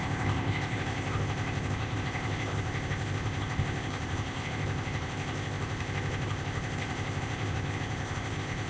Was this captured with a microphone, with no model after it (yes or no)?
no